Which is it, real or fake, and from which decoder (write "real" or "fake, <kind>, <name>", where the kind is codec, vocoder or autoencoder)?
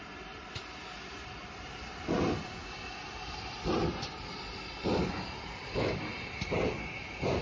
real